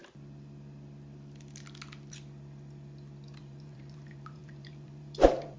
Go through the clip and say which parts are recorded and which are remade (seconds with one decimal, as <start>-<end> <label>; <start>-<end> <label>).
0.0-3.4 recorded; 3.4-5.6 remade